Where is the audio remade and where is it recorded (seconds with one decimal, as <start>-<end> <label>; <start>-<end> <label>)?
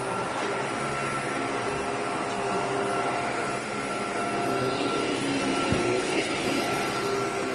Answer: 0.0-6.0 recorded; 6.0-6.6 remade; 6.6-7.5 recorded